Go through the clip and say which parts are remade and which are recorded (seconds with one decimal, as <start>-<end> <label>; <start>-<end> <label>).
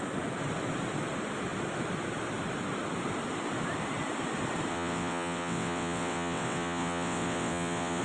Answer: 0.0-4.7 recorded; 4.7-8.0 remade